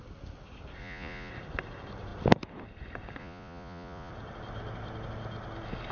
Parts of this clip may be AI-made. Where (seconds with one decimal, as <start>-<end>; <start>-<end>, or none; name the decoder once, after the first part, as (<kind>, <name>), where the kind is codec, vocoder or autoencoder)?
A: 0.8-1.3 (vocoder, Vocos); 3.2-4.1